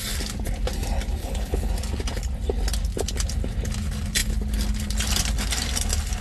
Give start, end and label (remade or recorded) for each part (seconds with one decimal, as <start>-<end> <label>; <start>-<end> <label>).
0.0-1.2 recorded; 1.2-1.7 remade; 1.7-6.2 recorded